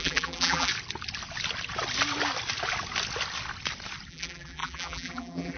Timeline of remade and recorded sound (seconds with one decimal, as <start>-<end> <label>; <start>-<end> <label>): 0.0-0.7 remade; 0.7-4.1 recorded; 4.1-5.6 remade